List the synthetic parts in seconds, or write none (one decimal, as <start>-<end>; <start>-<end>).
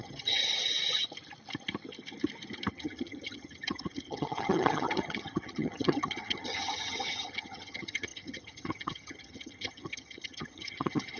0.0-0.4; 2.7-11.2